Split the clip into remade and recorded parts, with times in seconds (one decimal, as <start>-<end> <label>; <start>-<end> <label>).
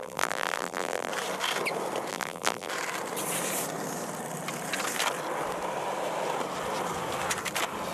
0.0-1.1 remade; 1.1-2.1 recorded; 2.1-2.7 remade; 2.7-7.9 recorded